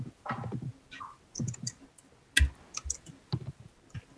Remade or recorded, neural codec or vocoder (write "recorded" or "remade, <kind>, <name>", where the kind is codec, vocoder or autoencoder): recorded